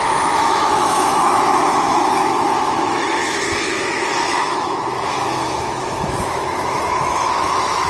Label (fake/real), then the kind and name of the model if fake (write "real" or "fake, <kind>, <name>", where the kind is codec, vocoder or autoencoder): fake, autoencoder, DAC-VAE